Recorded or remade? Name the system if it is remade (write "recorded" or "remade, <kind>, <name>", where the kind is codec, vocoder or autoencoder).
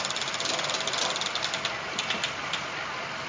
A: recorded